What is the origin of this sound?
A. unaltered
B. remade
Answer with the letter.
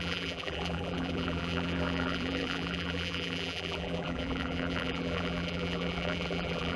B